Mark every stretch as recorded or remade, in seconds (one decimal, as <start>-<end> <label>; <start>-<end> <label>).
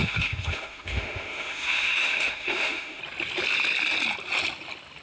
0.0-3.0 remade; 3.0-5.0 recorded